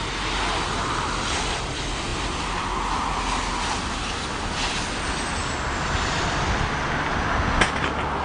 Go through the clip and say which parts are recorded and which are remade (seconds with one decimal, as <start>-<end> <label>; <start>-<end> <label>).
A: 0.0-8.2 recorded

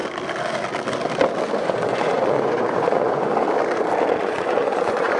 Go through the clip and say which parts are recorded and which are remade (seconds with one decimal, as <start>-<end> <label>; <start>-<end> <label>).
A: 0.0-1.6 recorded; 1.6-3.3 remade; 3.3-4.2 recorded; 4.2-5.2 remade